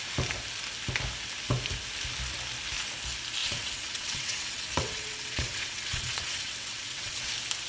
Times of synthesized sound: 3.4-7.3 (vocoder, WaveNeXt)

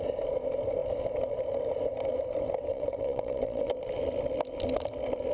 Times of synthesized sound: 2.7-3.7 (vocoder, WaveNeXt)

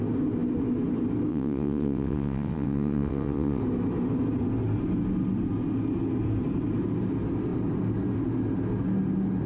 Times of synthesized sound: 1.3-3.6 (vocoder, WaveNeXt)

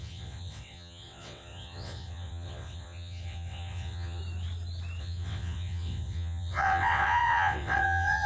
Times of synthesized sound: 0.0-4.2 (vocoder, WaveNeXt); 5.0-8.3